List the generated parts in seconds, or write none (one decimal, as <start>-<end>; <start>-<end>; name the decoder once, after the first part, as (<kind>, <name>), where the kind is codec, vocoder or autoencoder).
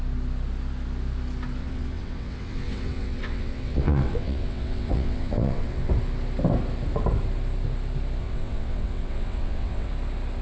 1.6-5.9 (vocoder, WaveNeXt); 8.2-9.9